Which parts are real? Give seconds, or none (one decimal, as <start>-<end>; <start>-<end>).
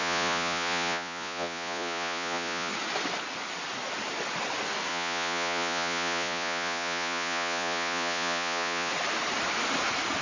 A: 2.7-4.9; 8.9-10.2